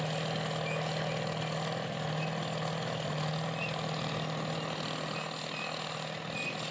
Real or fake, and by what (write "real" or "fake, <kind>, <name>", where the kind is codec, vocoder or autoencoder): real